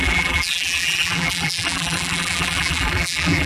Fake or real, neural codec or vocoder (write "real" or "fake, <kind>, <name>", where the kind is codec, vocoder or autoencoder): fake, vocoder, BigVGAN v2